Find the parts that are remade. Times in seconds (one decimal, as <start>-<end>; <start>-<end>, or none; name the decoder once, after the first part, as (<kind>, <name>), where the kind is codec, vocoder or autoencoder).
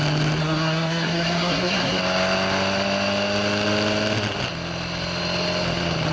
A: 0.4-2.0 (codec, SNAC)